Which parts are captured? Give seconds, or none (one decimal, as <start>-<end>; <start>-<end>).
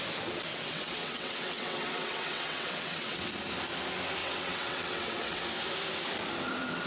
0.0-0.5; 3.3-4.2; 5.4-6.9